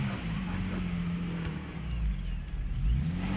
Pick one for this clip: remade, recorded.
recorded